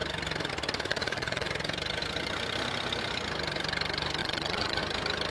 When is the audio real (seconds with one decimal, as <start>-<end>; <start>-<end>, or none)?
0.0-0.9; 1.5-4.2; 4.8-5.3

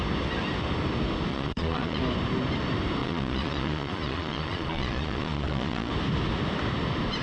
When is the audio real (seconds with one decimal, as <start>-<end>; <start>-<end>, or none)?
0.0-1.3; 2.0-3.0; 5.9-7.2

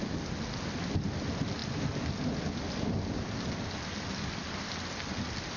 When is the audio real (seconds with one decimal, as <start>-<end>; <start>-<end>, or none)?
0.0-5.6